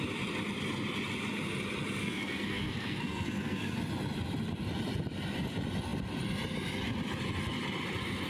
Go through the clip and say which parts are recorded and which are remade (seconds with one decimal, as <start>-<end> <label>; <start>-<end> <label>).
0.0-2.0 recorded; 2.0-3.8 remade; 3.8-8.3 recorded